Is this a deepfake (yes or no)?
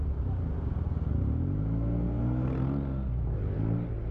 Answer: no